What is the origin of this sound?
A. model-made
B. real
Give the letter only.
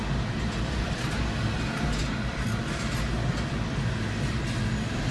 B